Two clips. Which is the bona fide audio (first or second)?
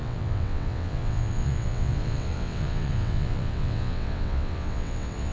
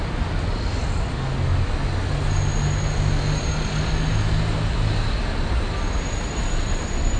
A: second